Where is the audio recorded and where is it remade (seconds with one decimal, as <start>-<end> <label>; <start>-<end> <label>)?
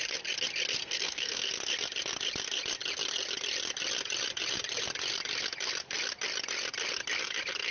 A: 0.0-0.8 recorded; 0.8-1.5 remade; 1.5-7.7 recorded